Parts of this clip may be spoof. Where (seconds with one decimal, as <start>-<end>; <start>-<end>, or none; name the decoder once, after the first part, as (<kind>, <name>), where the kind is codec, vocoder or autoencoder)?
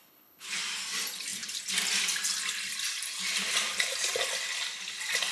0.0-0.6 (codec, HILCodec)